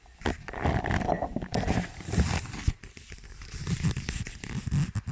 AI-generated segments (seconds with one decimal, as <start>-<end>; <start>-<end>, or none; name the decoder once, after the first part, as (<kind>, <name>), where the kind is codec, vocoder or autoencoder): 1.5-4.6 (vocoder, BigVGAN v2)